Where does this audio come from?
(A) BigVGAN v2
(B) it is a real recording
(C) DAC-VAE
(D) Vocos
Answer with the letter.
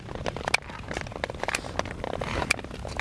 B